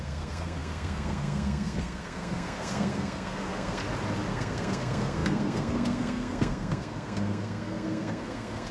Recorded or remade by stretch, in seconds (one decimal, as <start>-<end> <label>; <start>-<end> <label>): 0.0-3.8 remade; 3.8-4.3 recorded; 4.3-8.7 remade